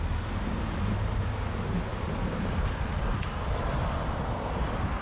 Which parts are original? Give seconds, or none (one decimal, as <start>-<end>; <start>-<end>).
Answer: 0.0-1.9; 4.0-5.0